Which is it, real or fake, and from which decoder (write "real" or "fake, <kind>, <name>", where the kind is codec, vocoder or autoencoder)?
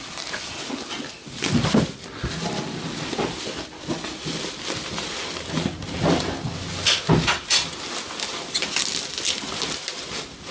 real